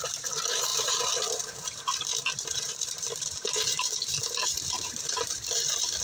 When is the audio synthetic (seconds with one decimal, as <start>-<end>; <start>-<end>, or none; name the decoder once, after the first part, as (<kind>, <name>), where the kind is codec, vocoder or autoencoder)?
0.0-6.0 (vocoder, BigVGAN v2)